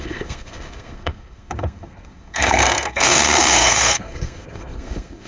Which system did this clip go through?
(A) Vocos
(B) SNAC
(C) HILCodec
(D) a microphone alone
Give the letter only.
B